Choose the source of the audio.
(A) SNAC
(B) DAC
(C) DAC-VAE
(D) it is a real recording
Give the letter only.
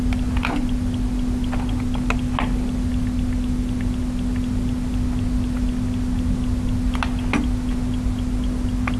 D